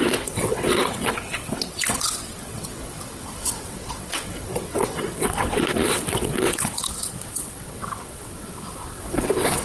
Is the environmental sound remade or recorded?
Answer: remade